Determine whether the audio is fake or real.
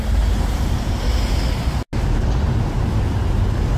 real